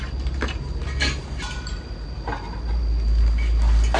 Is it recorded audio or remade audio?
recorded